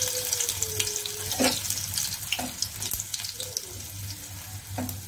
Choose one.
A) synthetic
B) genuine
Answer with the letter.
B